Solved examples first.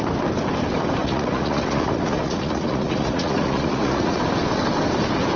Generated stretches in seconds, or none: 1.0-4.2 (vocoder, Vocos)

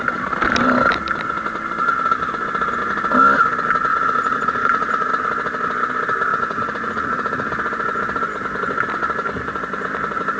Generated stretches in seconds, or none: 3.9-5.1 (vocoder, Vocos); 6.3-7.5

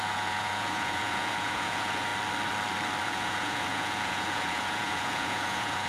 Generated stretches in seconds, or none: 0.0-2.1 (vocoder, Vocos); 3.0-5.9

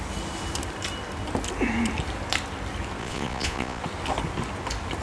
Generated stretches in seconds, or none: 3.0-3.8 (vocoder, Vocos)